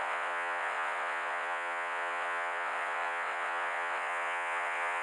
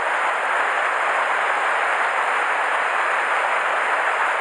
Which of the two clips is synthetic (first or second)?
first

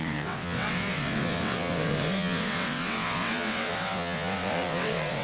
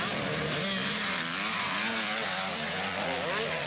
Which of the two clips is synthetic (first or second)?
first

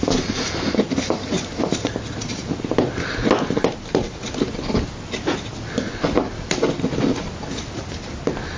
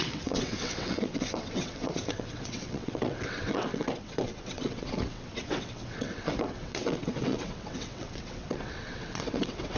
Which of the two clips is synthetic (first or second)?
second